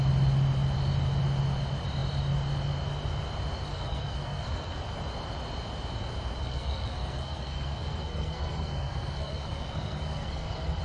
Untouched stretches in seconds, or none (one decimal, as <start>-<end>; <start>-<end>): 0.0-3.7; 4.8-6.4